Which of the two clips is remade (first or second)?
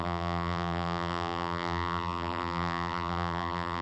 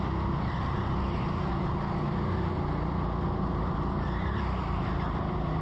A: first